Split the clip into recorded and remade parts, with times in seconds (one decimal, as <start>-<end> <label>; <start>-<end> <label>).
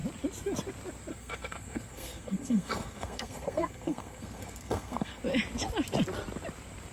0.0-1.1 recorded; 1.1-5.2 remade; 5.2-6.9 recorded